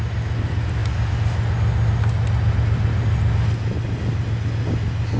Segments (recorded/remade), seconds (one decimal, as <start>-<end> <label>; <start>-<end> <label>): 0.0-5.2 recorded